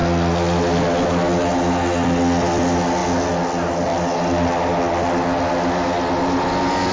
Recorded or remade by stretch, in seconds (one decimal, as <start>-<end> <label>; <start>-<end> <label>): 0.0-6.9 recorded